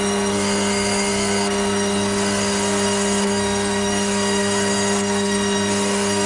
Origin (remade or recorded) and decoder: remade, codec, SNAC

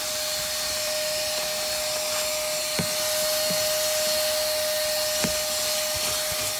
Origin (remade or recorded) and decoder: recorded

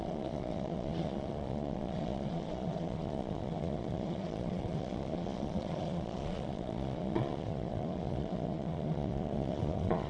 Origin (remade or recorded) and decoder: remade, vocoder, Vocos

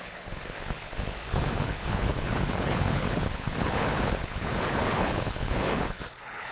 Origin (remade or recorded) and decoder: remade, codec, HILCodec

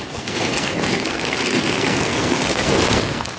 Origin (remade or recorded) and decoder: remade, codec, SNAC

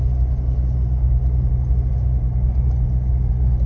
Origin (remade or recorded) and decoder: recorded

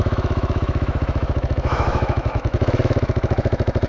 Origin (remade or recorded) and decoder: remade, autoencoder, DAC-VAE